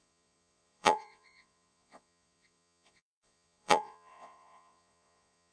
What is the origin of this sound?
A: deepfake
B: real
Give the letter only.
A